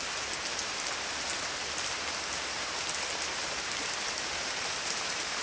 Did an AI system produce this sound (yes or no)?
no